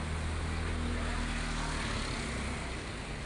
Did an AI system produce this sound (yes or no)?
no